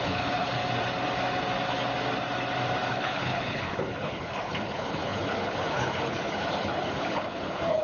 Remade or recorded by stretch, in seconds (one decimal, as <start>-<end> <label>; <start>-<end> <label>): 0.0-0.6 remade; 0.6-2.9 recorded; 2.9-7.8 remade